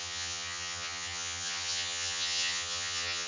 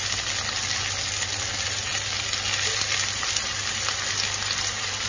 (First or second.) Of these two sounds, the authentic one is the second